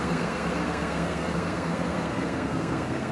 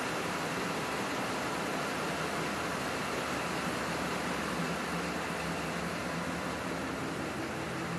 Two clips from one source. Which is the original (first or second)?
second